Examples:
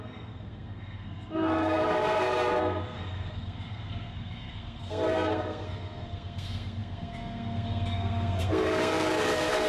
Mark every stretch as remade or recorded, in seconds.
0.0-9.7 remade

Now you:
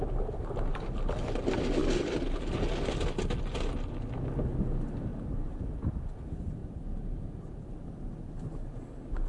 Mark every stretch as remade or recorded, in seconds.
0.0-5.1 recorded; 5.1-5.6 remade; 5.6-6.6 recorded; 6.6-7.7 remade; 7.7-9.3 recorded

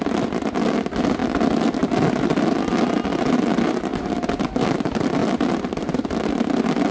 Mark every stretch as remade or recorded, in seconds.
0.0-6.9 recorded

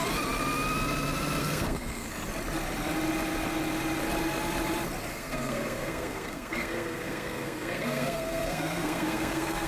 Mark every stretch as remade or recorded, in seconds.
0.0-1.4 recorded; 1.4-2.1 remade; 2.1-5.1 recorded; 5.1-9.7 remade

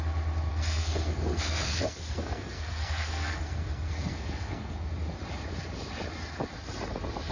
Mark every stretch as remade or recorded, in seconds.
0.0-0.5 recorded; 0.5-4.9 remade; 4.9-7.3 recorded

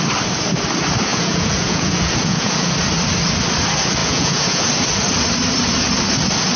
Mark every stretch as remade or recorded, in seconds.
0.0-1.1 recorded; 1.1-2.7 remade; 2.7-4.0 recorded; 4.0-4.6 remade; 4.6-6.6 recorded